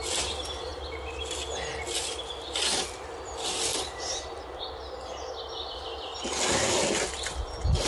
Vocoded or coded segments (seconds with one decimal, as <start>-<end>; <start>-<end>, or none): 3.7-4.6